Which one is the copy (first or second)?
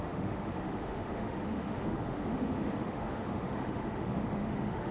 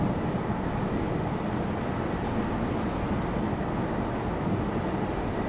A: first